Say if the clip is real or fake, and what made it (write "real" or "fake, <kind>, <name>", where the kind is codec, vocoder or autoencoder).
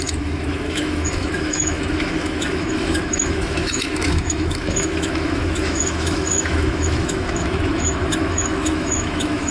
fake, autoencoder, DAC-VAE